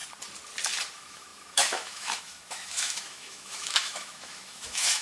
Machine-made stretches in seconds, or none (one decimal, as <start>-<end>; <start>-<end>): 0.9-5.0